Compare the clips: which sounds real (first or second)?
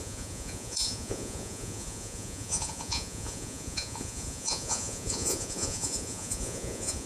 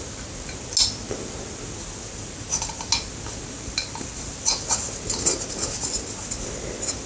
second